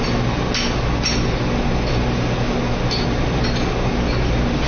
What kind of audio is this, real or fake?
real